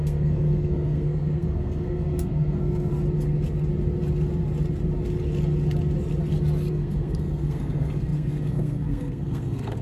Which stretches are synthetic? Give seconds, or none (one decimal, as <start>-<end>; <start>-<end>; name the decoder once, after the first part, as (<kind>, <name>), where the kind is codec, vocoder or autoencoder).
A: 0.0-2.9 (codec, SNAC); 6.7-9.8

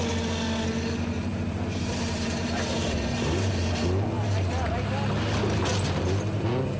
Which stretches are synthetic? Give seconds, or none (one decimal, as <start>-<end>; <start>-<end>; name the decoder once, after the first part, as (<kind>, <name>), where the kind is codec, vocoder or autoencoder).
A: 1.3-3.7 (vocoder, BigVGAN v2)

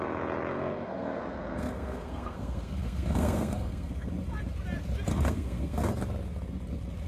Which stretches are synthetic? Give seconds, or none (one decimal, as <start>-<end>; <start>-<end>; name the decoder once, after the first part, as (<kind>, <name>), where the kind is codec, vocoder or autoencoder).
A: 0.5-4.1 (codec, SNAC); 5.1-5.9